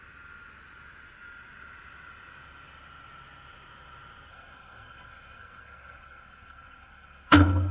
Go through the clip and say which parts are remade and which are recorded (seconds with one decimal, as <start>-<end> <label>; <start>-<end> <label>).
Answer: 0.0-4.3 recorded; 4.3-7.7 remade